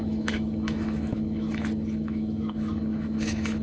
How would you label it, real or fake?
fake